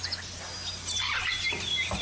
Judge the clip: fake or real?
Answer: real